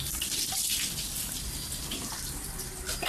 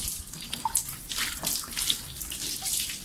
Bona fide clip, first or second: second